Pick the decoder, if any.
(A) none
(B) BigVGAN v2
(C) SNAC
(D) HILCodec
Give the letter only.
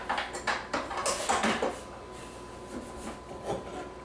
A